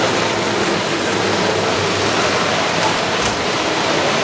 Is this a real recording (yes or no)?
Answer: no